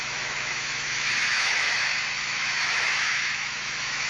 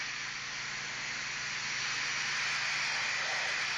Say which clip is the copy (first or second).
first